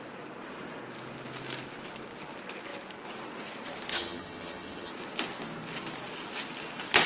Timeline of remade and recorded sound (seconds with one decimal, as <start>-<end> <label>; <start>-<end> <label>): 0.0-3.9 recorded; 3.9-4.9 remade; 4.9-7.1 recorded